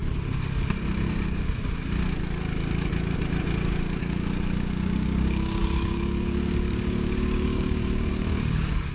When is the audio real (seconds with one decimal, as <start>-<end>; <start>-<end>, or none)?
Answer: 0.0-4.0

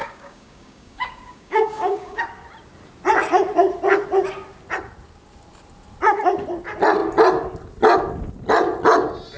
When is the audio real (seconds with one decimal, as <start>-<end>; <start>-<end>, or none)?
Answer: 2.2-9.4

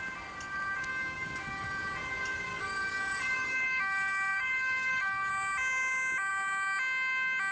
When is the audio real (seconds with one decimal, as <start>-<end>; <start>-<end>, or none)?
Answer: 0.0-0.9; 1.8-2.5; 5.3-7.5

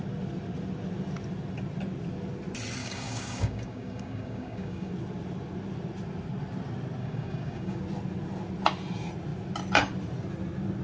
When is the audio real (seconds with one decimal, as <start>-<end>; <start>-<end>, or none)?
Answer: 0.0-2.8; 4.9-7.0; 7.8-10.8

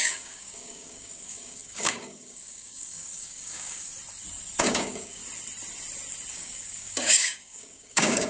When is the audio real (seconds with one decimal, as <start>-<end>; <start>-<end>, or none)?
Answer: 3.9-4.6; 5.2-6.3

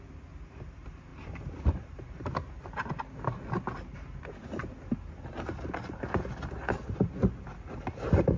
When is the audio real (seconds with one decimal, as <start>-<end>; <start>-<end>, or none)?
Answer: 0.0-8.4

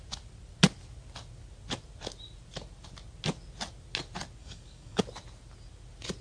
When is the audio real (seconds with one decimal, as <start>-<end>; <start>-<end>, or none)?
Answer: 0.0-4.4; 5.0-6.2